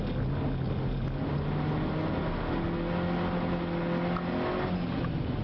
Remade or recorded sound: recorded